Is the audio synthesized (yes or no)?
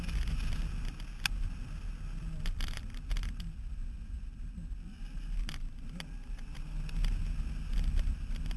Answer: no